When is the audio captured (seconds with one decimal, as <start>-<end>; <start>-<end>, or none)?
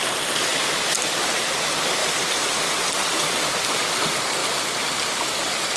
0.0-2.0; 3.5-5.8